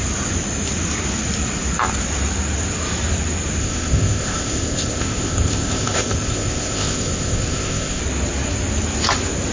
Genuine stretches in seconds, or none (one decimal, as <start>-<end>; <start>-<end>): 0.0-3.6; 8.0-9.5